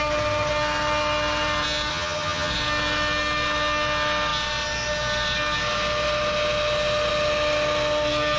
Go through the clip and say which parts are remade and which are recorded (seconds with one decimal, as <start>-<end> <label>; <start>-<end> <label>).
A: 0.0-1.9 recorded; 1.9-2.5 remade; 2.5-8.4 recorded